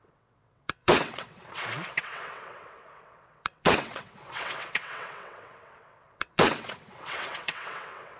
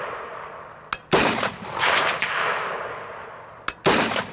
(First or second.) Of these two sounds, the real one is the second